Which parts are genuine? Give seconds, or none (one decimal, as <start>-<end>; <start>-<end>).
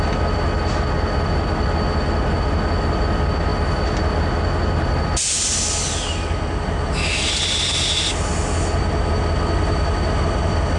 0.0-10.8